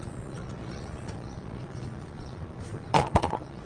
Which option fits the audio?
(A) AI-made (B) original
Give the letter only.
A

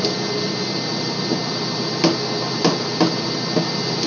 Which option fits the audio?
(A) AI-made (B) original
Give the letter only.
B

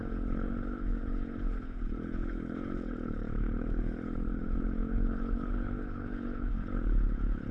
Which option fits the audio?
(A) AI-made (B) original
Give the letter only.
A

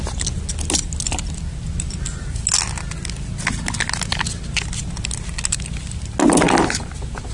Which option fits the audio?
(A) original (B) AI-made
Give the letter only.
A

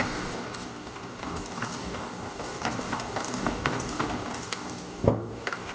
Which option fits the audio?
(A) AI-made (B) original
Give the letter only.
A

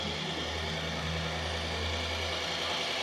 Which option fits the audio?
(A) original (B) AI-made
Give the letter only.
A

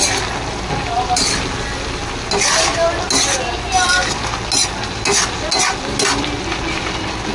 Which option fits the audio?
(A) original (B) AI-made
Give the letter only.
A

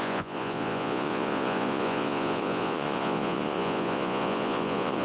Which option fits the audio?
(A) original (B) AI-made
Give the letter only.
B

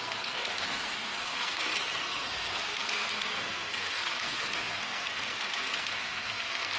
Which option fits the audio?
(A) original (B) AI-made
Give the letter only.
B